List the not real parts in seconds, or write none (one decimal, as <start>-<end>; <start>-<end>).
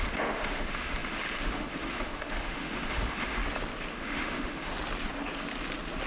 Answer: 0.0-3.4; 3.9-4.7